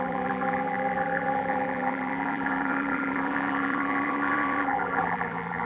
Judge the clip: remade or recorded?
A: remade